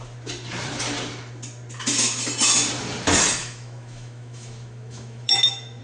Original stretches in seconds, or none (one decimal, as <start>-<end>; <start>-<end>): 0.0-3.4